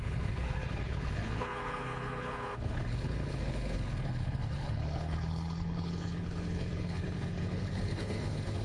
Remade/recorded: remade